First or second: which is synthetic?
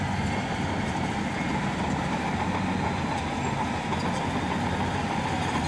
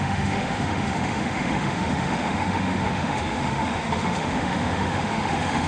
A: second